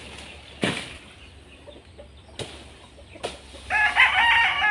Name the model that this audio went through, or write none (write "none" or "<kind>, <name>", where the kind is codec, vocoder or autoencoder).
none